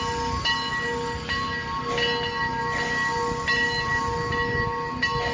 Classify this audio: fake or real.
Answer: real